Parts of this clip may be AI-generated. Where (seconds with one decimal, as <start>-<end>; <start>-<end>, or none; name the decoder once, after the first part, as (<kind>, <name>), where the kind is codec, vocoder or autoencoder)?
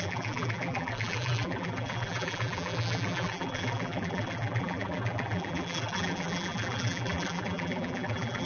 0.0-8.5 (vocoder, BigVGAN v2)